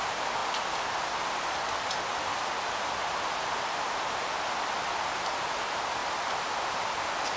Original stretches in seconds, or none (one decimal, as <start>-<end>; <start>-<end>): 0.0-6.0

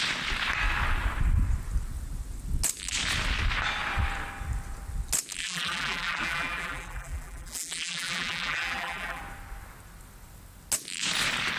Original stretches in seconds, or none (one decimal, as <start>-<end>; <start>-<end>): 0.0-5.4; 9.2-11.6